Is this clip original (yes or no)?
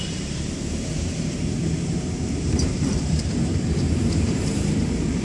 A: no